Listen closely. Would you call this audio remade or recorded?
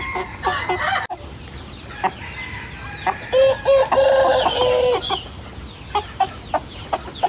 recorded